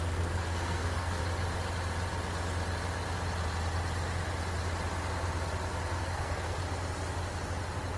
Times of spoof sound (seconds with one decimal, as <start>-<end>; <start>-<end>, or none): 0.0-1.2; 6.0-6.6